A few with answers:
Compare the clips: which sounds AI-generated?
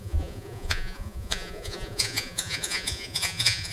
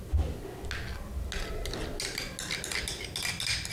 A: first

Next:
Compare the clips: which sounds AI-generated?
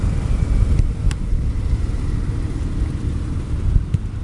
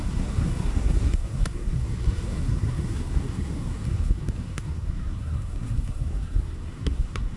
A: second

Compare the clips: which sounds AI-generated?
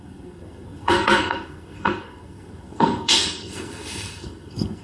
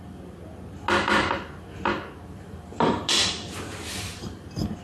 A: first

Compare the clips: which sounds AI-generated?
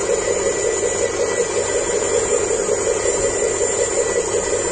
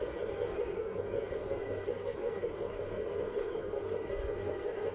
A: second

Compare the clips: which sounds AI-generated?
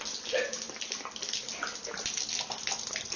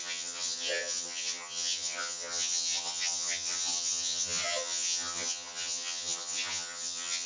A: second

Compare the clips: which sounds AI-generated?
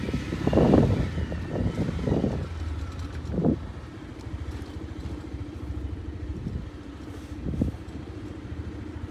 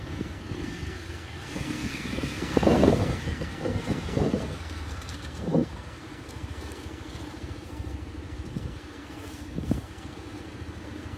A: second